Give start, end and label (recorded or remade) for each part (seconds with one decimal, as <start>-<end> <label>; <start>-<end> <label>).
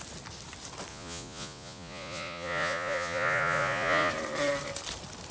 0.0-0.9 recorded; 0.9-4.1 remade; 4.1-5.3 recorded